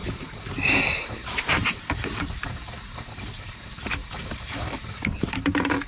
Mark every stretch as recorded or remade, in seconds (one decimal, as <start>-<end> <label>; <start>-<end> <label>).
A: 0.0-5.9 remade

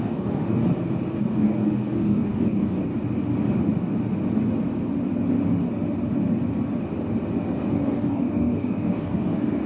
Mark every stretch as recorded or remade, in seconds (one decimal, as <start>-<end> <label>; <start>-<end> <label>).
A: 0.0-0.6 remade; 0.6-1.2 recorded; 1.2-2.9 remade; 2.9-7.7 recorded; 7.7-9.7 remade

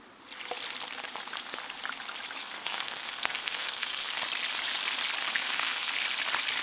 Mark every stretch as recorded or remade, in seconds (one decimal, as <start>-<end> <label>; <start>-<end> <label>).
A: 0.0-2.4 recorded; 2.4-4.2 remade; 4.2-5.2 recorded; 5.2-5.9 remade; 5.9-6.6 recorded